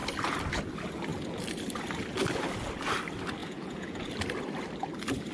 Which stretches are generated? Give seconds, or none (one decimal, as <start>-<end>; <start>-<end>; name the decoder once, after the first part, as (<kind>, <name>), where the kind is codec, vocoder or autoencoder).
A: 3.4-4.1 (vocoder, Vocos)